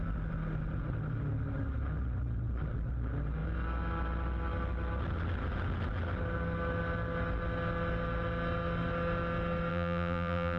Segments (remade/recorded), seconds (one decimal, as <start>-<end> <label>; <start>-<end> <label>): 0.0-9.7 recorded; 9.7-10.6 remade